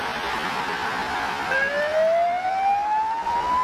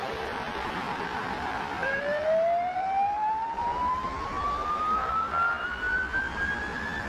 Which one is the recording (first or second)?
first